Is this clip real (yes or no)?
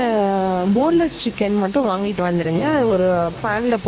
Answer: no